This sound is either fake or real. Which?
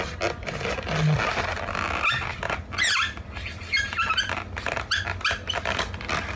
real